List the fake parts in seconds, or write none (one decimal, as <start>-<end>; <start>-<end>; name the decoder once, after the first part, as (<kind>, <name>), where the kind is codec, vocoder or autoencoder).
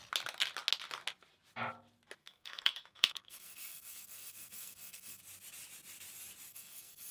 2.2-5.2 (codec, SNAC); 6.5-7.1